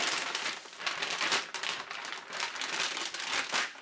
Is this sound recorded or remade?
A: recorded